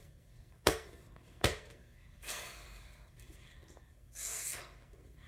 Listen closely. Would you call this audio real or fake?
fake